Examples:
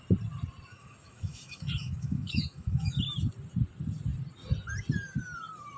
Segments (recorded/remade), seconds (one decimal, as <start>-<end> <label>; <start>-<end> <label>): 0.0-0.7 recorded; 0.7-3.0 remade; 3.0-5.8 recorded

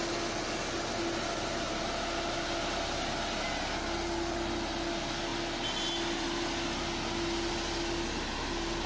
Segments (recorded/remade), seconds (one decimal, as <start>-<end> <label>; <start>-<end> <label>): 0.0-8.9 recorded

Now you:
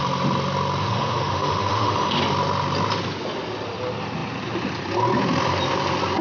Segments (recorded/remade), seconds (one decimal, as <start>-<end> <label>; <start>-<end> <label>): 0.0-0.8 recorded; 0.8-2.2 remade; 2.2-6.2 recorded

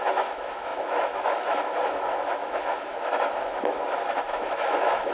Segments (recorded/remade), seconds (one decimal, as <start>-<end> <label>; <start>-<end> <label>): 0.0-5.1 remade

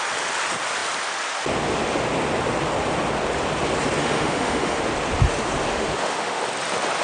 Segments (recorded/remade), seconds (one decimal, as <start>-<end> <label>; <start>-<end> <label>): 0.0-4.0 recorded; 4.0-4.8 remade; 4.8-5.7 recorded; 5.7-6.4 remade; 6.4-7.0 recorded

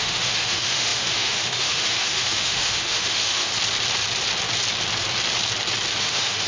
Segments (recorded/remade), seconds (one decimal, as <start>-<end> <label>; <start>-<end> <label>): 0.0-3.5 remade; 3.5-6.0 recorded; 6.0-6.5 remade